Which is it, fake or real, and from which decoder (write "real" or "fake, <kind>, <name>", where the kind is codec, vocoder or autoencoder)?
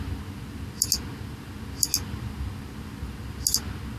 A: real